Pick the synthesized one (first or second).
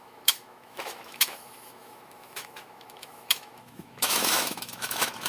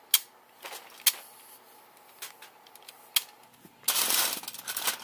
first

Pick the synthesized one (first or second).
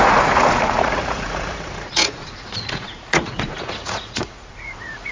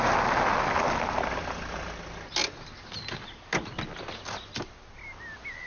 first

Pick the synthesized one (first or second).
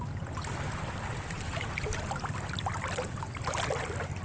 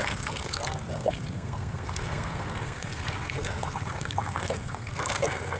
second